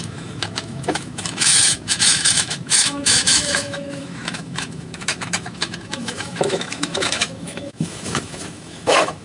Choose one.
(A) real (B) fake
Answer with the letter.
B